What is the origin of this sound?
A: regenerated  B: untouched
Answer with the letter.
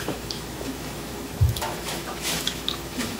A